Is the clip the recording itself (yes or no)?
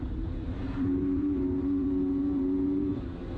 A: no